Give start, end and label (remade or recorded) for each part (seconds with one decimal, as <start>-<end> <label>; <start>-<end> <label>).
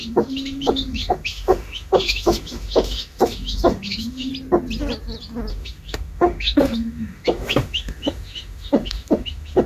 0.0-4.3 remade; 4.3-5.5 recorded; 5.5-9.7 remade